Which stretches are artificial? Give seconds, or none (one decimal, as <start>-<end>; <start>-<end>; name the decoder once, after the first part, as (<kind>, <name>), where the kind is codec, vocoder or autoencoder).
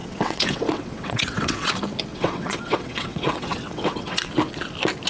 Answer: 0.0-1.7 (vocoder, WaveNeXt); 2.1-4.3